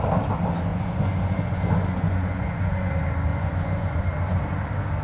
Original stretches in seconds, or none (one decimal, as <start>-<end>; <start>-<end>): 0.0-0.7; 2.9-3.3; 4.0-5.0